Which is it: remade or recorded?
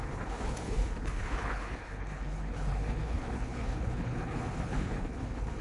remade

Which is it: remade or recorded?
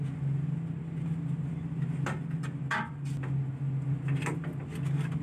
recorded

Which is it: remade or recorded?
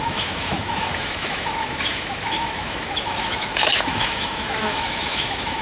remade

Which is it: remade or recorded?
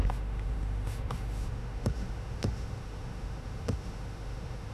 remade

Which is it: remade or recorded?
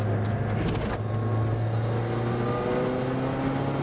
recorded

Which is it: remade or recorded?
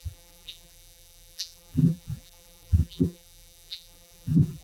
remade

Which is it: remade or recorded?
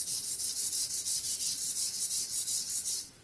remade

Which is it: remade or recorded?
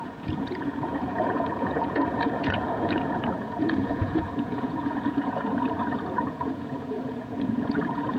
remade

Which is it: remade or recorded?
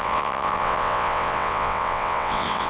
remade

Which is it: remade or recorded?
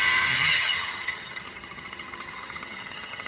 remade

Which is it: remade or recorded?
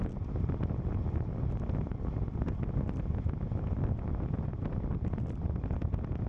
recorded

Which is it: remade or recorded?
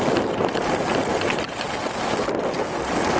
recorded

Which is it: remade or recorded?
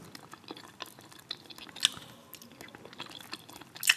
recorded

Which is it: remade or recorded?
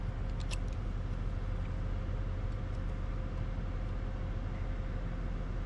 recorded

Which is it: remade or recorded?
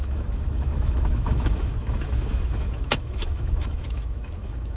remade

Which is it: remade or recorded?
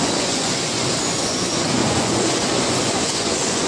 remade